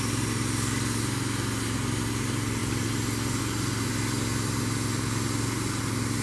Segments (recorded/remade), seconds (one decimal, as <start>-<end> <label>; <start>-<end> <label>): 0.0-6.2 recorded